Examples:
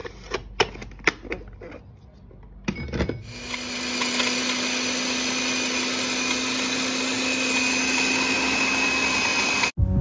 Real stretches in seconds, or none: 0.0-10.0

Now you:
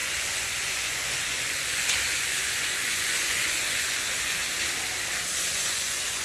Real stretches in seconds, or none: 4.4-5.5